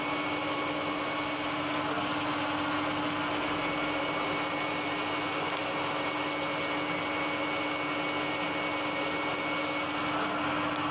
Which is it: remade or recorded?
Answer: recorded